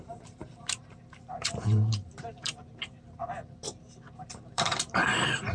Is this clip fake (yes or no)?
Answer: yes